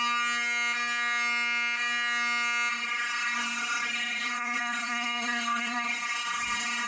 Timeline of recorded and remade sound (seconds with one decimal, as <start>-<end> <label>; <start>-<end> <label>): 0.0-2.7 recorded; 2.7-6.9 remade